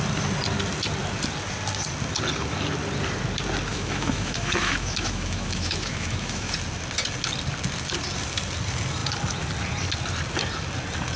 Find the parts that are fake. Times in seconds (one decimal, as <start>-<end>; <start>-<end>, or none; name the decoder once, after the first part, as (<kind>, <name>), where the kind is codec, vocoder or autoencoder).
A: 3.7-6.5 (autoencoder, DAC-VAE)